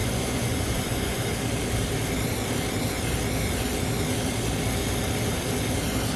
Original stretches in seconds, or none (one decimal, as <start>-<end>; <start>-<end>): 1.2-6.2